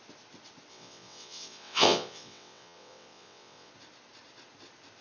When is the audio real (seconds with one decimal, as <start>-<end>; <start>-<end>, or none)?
0.0-0.7; 3.7-5.0